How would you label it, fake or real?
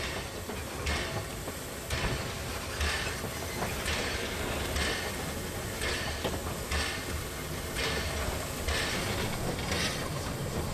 real